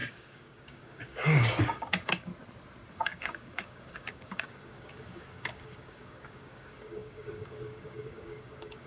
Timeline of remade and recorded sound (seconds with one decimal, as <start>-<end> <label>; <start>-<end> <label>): 0.0-2.3 remade; 2.3-2.9 recorded; 2.9-8.9 remade